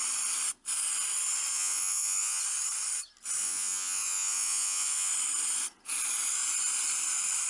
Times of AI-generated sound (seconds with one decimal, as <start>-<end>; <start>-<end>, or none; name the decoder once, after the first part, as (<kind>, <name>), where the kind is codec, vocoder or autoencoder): 1.5-2.4 (vocoder, Vocos); 3.4-5.1